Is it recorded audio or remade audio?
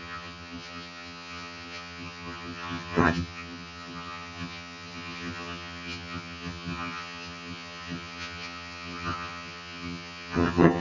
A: remade